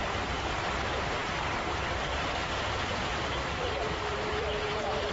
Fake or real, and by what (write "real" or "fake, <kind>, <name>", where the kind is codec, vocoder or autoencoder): fake, vocoder, BigVGAN v2